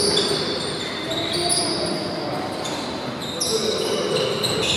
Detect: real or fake real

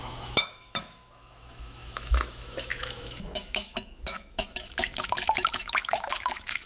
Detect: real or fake fake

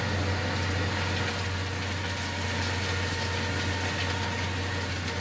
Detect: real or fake real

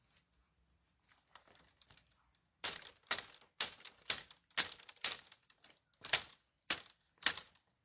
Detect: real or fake real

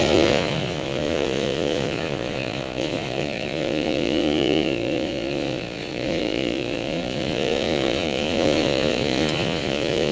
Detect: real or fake fake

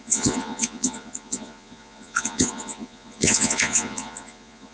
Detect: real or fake fake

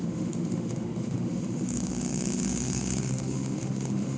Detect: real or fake fake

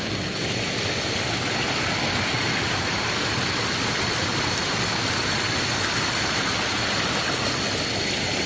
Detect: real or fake real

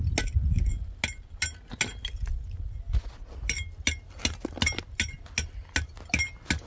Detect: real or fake real